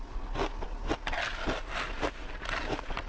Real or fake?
real